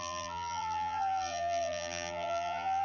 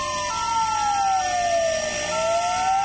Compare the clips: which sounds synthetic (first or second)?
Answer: first